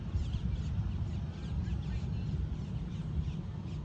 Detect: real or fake real